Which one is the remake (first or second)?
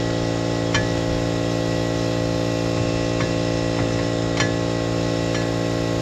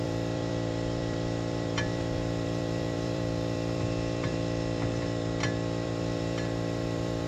second